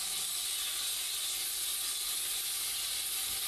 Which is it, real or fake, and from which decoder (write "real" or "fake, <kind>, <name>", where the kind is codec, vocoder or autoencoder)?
real